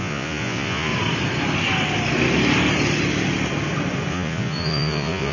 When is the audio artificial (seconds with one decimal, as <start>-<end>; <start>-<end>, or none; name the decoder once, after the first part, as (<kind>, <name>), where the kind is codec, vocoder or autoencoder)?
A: 0.0-0.9 (vocoder, Vocos); 4.1-5.3